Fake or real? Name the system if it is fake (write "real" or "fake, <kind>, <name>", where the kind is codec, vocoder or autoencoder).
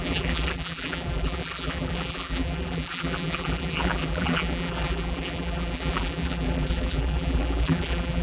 fake, vocoder, BigVGAN v2